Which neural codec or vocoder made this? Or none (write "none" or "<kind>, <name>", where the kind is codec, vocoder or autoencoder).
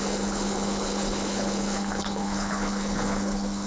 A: codec, HILCodec